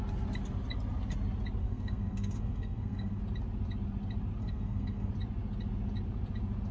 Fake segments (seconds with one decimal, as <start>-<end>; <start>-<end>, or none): 1.6-3.2; 4.4-5.1